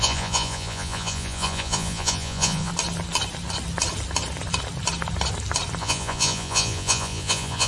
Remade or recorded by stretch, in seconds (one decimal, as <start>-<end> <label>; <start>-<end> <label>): 0.0-2.7 remade; 2.7-5.8 recorded; 5.8-7.7 remade